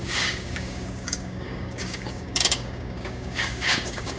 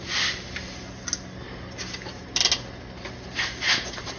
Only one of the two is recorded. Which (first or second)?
second